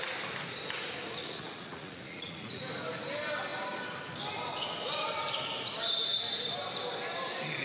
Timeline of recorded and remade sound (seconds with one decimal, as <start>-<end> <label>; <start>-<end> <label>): 0.0-1.2 recorded; 1.2-2.6 remade; 2.6-7.6 recorded